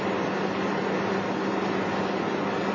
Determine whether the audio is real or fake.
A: real